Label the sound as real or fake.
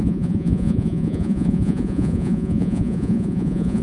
fake